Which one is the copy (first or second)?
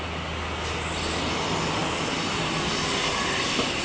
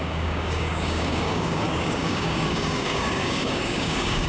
second